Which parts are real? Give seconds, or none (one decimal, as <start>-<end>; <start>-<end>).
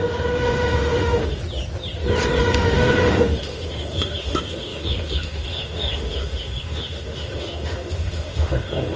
1.4-2.4